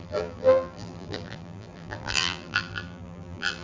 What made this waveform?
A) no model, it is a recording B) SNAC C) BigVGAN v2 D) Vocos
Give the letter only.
C